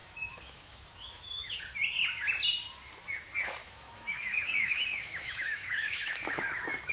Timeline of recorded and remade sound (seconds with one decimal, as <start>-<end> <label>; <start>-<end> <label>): 0.0-1.6 remade; 1.6-3.6 recorded; 3.6-6.9 remade